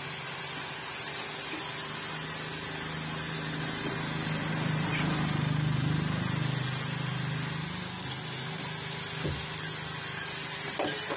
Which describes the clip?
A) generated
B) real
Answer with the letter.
B